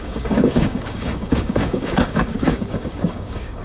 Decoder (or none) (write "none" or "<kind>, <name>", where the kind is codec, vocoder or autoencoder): codec, DAC